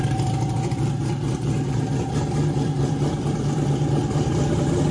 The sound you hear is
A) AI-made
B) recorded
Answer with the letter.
B